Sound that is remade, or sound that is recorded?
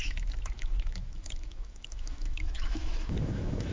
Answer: remade